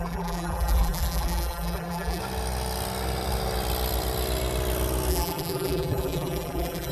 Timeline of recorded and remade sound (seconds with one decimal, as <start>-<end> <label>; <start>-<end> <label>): 0.0-2.2 remade; 2.2-5.1 recorded; 5.1-6.9 remade